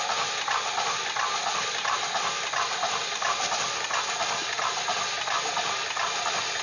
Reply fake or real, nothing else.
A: real